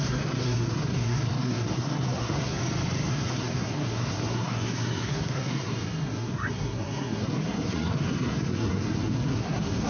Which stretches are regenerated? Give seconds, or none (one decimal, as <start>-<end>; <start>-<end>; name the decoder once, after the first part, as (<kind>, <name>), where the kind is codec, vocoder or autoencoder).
0.0-2.6 (codec, SNAC); 3.1-9.9